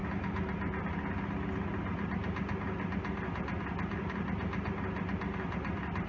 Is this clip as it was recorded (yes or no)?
yes